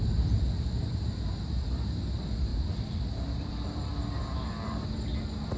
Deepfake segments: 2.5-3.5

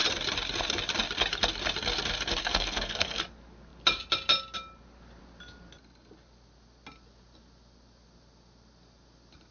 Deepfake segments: 2.4-3.2

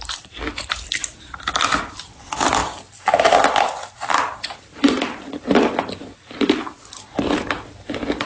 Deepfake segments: 0.0-2.6; 3.6-8.3

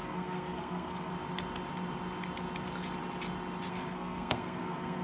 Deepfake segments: 0.0-1.1; 3.7-5.0

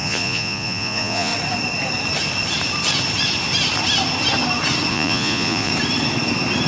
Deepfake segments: 0.0-1.3; 4.9-5.7

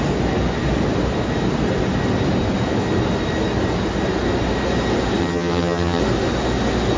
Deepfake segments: 5.2-6.0

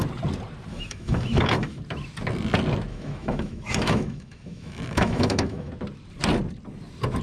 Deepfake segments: 0.7-1.8; 2.9-5.7

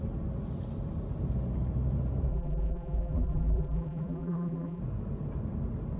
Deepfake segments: 2.3-4.8